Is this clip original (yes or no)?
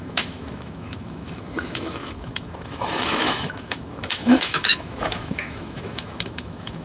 no